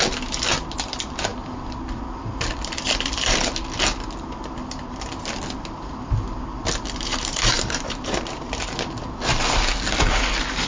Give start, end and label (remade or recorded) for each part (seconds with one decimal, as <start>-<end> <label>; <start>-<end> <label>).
0.0-7.1 recorded; 7.1-8.6 remade; 8.6-10.7 recorded